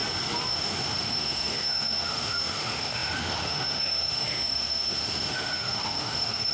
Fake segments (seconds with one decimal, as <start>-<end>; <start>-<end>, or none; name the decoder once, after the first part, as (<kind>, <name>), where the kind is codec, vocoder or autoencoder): 0.5-6.5 (autoencoder, DAC-VAE)